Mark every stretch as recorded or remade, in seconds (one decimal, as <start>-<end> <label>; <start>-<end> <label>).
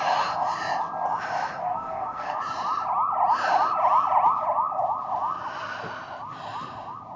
0.0-1.6 recorded; 1.6-2.4 remade; 2.4-7.2 recorded